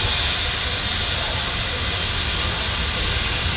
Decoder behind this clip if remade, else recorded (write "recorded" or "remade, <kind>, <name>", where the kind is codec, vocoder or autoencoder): recorded